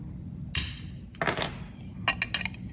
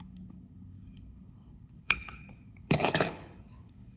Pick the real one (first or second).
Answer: first